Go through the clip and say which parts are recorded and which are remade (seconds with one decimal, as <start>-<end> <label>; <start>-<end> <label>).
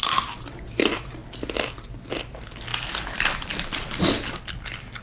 0.0-2.7 recorded; 2.7-5.0 remade